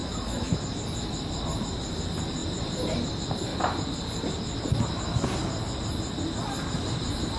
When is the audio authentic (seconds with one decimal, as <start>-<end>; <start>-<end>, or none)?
0.6-7.4